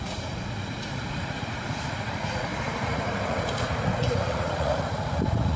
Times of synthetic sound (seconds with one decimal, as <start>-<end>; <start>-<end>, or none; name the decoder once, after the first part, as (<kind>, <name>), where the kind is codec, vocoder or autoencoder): 0.0-5.6 (vocoder, Vocos)